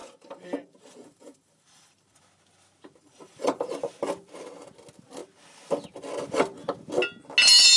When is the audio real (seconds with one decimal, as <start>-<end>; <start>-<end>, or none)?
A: 2.2-3.0; 3.6-7.8